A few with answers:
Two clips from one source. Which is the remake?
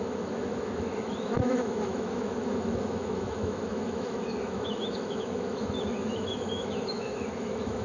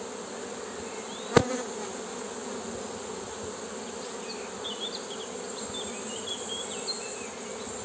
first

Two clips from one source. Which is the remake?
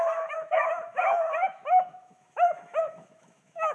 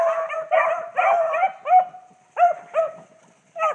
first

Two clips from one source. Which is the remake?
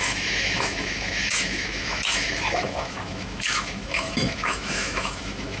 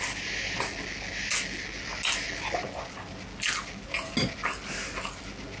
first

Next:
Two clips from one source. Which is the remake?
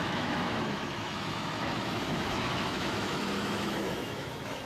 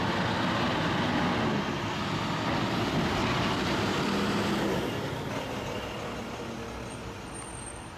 first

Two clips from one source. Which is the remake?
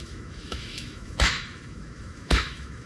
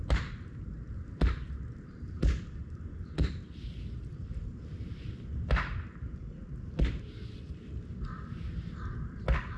first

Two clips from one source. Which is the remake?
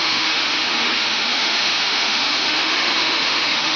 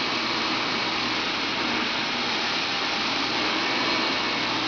first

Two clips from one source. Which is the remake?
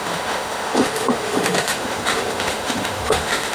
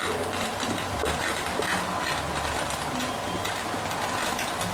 first